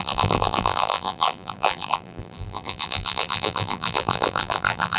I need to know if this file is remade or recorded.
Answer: remade